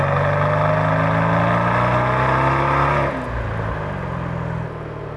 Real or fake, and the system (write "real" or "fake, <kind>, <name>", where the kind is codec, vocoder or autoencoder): real